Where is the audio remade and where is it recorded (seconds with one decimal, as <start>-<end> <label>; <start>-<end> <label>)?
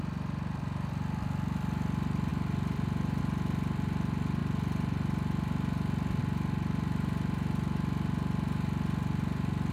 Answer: 0.0-9.7 recorded